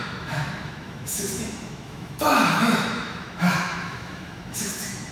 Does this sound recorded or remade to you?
remade